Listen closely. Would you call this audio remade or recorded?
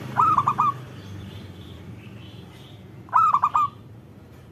remade